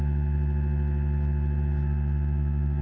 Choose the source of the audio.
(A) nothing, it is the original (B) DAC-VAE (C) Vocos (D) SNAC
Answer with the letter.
A